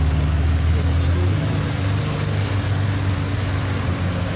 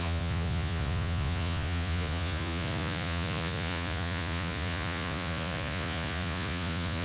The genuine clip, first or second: first